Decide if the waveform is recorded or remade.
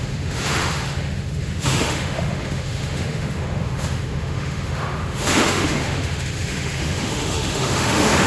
remade